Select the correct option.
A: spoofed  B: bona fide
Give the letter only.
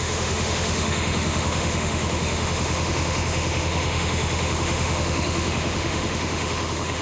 A